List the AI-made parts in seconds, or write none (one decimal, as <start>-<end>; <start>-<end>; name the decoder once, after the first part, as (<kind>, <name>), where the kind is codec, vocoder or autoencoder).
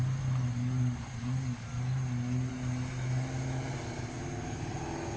none